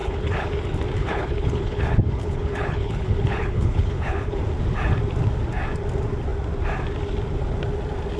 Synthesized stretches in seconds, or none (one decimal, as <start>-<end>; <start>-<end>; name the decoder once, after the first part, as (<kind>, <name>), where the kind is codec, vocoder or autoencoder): 0.0-0.5 (codec, HILCodec); 1.0-4.4